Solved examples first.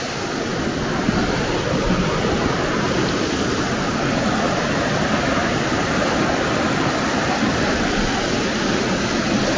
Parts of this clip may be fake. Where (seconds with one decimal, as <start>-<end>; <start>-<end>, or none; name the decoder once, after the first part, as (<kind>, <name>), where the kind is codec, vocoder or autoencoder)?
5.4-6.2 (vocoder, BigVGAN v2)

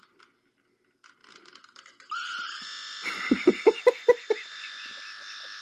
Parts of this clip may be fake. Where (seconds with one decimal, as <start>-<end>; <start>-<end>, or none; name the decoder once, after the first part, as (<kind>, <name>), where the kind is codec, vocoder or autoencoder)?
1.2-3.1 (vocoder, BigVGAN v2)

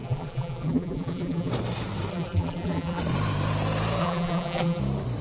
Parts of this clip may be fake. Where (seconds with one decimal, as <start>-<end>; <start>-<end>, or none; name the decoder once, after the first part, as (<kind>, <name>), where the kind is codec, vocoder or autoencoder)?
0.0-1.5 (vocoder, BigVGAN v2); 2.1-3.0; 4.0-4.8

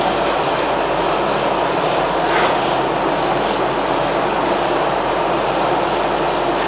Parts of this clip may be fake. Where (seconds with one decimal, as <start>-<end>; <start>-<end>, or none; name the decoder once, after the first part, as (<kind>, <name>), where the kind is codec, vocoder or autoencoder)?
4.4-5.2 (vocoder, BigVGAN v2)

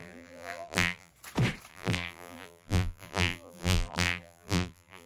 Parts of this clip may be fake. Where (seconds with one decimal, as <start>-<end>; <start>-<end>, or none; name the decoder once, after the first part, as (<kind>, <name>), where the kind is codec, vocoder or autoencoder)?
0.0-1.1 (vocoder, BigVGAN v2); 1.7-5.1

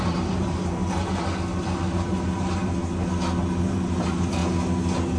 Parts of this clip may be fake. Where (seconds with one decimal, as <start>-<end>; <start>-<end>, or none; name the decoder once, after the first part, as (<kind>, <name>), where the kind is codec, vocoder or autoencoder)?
0.0-0.8 (vocoder, BigVGAN v2); 1.6-2.8; 3.4-4.4

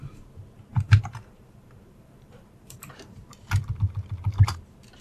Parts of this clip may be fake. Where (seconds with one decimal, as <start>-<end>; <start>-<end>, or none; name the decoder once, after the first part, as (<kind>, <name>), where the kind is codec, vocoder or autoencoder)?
0.7-3.2 (vocoder, BigVGAN v2)

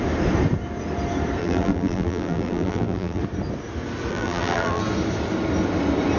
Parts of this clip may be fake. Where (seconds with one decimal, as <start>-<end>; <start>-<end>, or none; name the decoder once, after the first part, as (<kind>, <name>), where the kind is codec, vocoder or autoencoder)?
1.4-3.2 (vocoder, BigVGAN v2); 4.1-4.8